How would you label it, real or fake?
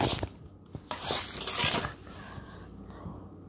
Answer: real